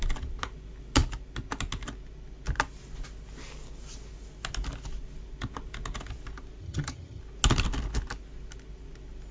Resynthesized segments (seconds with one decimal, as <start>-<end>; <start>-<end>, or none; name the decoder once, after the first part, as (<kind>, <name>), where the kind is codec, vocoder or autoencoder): 6.6-7.2 (vocoder, HiFi-GAN)